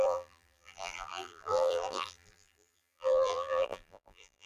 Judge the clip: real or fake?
fake